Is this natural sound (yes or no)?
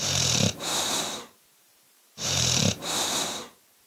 no